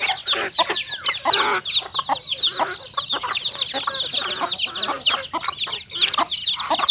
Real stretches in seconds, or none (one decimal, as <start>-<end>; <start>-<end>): 0.0-6.9